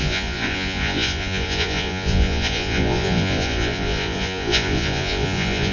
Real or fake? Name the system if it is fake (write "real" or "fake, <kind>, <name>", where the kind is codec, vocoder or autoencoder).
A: fake, vocoder, Vocos